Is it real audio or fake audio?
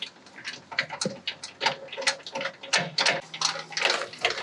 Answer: real